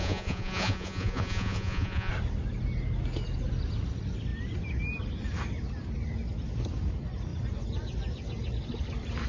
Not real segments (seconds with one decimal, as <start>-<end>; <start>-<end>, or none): 0.0-2.1